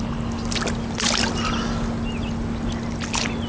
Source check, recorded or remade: recorded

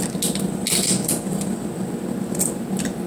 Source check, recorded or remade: recorded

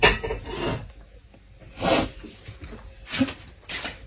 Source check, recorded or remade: recorded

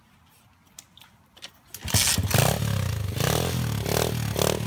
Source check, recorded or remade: recorded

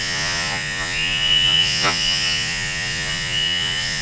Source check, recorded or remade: remade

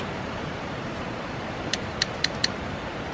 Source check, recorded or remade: remade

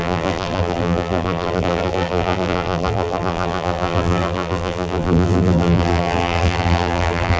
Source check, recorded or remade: remade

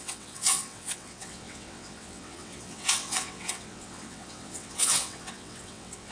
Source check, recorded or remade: remade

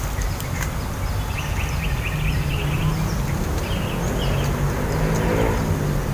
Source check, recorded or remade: recorded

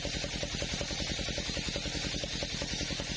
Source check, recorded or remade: recorded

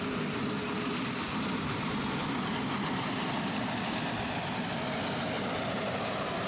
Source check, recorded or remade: recorded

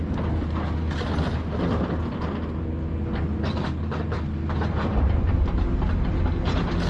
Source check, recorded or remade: recorded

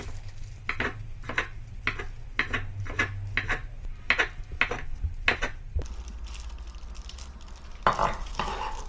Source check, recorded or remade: recorded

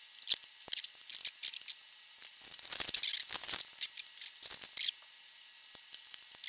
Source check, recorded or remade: recorded